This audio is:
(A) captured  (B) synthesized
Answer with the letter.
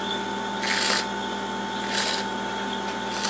A